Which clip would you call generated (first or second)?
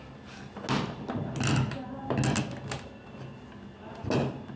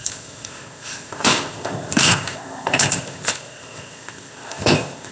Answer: second